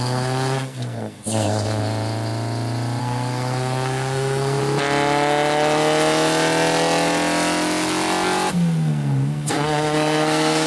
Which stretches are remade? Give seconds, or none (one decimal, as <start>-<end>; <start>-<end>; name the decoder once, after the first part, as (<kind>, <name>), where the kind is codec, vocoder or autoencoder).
0.0-1.8 (codec, SNAC); 3.0-4.6; 8.5-10.7